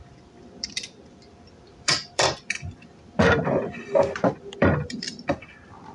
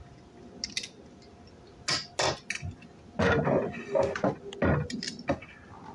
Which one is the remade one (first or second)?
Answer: first